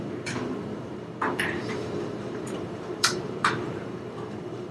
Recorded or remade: remade